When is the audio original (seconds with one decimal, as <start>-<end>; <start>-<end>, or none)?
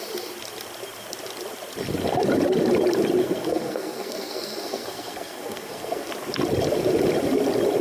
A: 0.0-3.2; 6.1-7.8